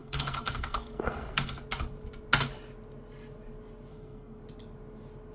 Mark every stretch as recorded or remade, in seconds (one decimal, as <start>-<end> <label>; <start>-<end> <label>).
0.0-1.6 remade; 1.6-3.9 recorded; 3.9-4.4 remade; 4.4-5.3 recorded